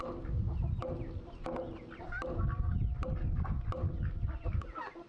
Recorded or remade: recorded